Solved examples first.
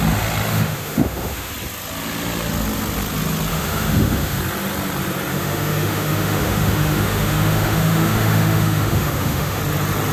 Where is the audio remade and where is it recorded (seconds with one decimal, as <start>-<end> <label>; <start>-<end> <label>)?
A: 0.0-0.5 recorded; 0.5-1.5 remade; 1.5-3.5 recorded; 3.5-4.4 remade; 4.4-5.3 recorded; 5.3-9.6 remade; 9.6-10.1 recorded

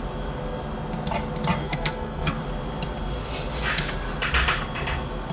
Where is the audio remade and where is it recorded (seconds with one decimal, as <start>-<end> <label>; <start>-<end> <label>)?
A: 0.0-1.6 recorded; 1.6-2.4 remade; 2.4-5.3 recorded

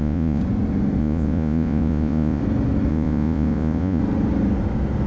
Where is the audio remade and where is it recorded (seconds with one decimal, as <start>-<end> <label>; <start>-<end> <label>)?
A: 0.0-0.4 remade; 0.4-1.0 recorded; 1.0-2.4 remade; 2.4-2.9 recorded; 2.9-4.0 remade; 4.0-5.1 recorded

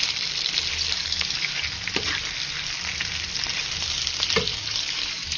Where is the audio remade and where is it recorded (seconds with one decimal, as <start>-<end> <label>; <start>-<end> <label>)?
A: 0.0-1.0 recorded; 1.0-1.6 remade; 1.6-4.5 recorded; 4.5-5.4 remade